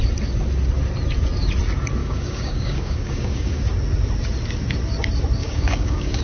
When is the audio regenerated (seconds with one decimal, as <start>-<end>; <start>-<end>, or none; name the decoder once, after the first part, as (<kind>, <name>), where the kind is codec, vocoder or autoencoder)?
2.0-3.6 (codec, DAC); 5.4-6.2